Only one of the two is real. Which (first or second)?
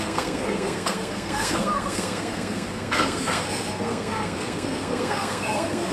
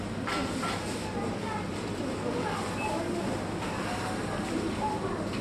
second